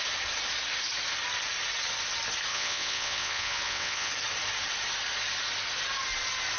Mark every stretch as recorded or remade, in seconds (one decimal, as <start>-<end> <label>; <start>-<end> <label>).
0.0-2.5 recorded; 2.5-4.1 remade; 4.1-6.6 recorded